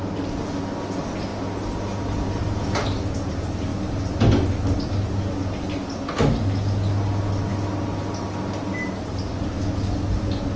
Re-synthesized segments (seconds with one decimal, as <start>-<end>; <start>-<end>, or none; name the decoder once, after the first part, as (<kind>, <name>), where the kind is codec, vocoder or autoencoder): none